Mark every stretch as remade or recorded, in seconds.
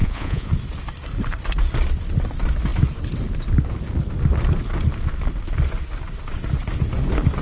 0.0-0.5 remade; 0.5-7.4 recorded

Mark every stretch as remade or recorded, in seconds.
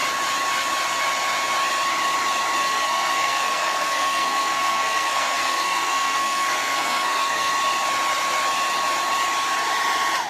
0.0-2.6 recorded; 2.6-7.5 remade; 7.5-10.3 recorded